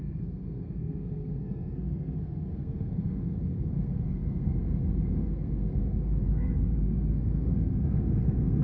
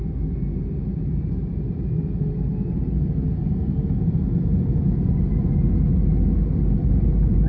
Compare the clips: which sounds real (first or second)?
second